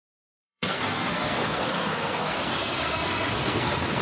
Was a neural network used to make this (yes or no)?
yes